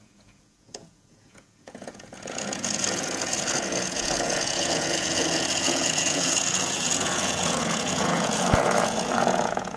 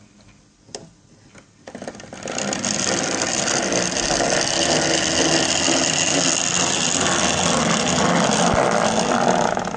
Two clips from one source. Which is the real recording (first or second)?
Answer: second